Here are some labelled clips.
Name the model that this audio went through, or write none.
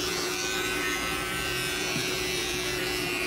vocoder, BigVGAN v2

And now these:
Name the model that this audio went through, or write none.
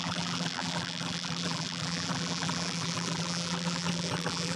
vocoder, BigVGAN v2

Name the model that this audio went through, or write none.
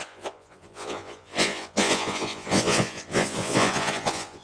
vocoder, Vocos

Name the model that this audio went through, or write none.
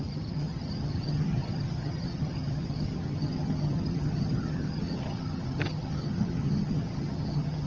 vocoder, HiFi-GAN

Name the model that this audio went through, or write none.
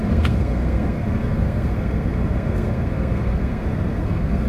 codec, SNAC